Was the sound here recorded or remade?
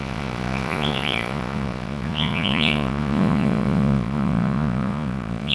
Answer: remade